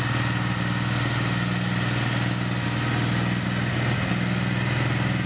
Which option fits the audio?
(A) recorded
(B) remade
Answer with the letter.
A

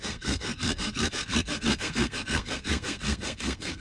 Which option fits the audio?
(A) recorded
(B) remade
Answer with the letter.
B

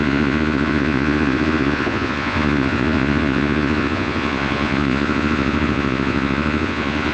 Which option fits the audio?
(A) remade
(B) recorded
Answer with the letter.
A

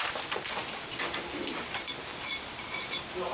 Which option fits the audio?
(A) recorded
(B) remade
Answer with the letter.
A